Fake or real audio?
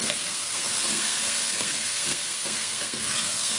fake